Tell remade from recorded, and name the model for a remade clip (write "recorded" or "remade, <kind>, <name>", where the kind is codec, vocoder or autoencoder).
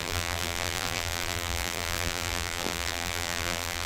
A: remade, vocoder, BigVGAN v2